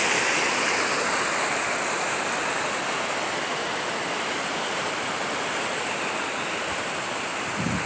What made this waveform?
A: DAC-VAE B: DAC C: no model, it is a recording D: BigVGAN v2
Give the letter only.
C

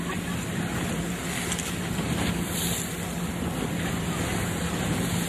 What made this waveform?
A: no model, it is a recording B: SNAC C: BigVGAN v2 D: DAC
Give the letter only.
A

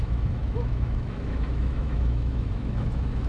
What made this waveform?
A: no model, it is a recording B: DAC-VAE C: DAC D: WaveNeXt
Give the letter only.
B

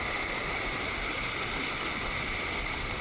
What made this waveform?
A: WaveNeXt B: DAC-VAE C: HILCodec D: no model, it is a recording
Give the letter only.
D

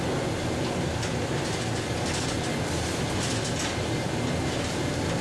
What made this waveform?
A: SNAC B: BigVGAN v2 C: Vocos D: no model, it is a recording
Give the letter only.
D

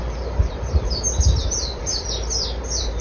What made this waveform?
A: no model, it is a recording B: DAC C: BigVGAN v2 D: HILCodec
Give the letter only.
C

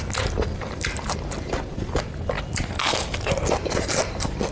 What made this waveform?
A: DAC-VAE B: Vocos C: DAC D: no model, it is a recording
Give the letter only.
D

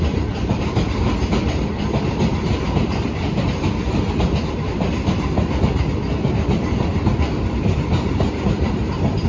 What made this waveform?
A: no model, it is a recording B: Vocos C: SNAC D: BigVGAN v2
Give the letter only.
D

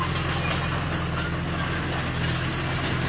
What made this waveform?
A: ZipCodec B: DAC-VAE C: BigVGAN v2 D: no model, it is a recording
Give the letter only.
D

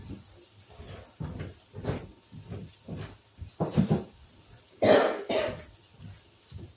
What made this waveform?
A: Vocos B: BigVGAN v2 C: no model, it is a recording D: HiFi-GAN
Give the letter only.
C